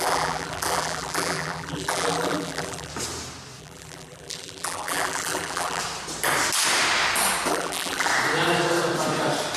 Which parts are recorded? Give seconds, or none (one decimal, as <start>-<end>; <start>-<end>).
2.9-3.6; 5.8-7.5; 8.1-9.6